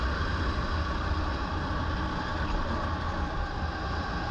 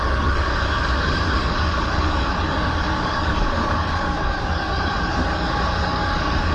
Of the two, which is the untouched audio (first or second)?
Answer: first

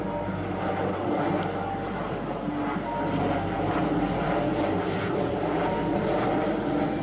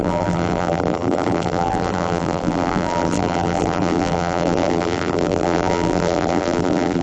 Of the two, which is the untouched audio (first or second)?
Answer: first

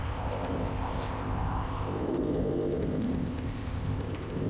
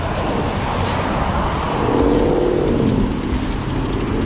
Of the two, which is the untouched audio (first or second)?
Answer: second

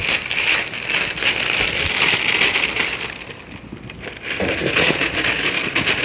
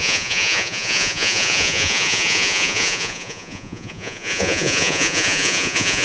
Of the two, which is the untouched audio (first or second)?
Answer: first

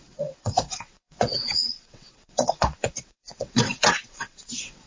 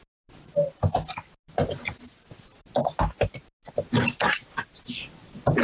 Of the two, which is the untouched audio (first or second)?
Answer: second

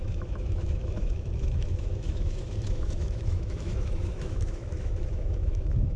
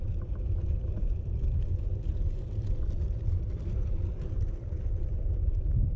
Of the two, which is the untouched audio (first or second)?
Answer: second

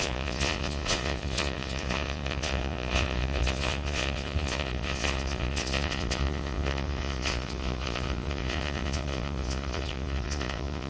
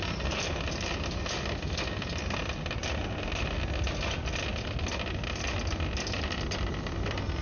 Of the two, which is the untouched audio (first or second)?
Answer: second